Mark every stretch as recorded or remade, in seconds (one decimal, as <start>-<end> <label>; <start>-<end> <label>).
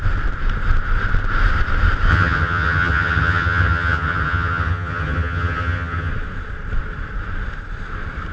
0.0-2.1 recorded; 2.1-6.1 remade; 6.1-8.3 recorded